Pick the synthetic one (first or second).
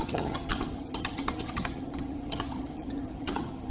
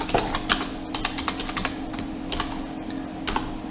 first